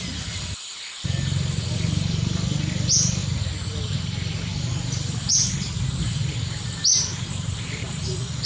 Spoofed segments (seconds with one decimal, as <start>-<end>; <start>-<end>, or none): 7.1-8.1